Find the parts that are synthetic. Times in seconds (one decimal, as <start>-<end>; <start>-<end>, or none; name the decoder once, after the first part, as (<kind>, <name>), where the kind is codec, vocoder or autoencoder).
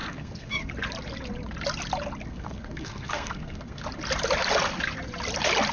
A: 0.0-0.7 (codec, SNAC); 2.3-3.8